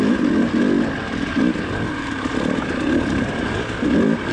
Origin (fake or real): real